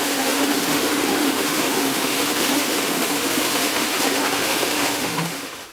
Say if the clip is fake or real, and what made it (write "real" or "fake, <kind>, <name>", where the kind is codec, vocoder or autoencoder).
fake, autoencoder, DAC-VAE